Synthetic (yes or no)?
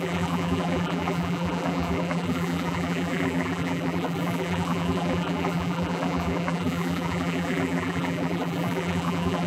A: yes